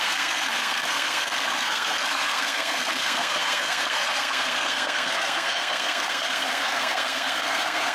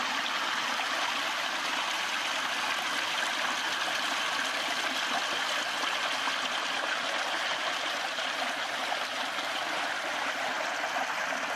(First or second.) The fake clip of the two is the first